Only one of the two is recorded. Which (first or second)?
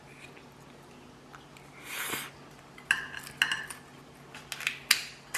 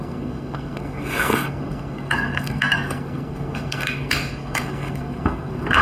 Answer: first